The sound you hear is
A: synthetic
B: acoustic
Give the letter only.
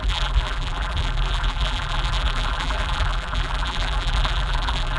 A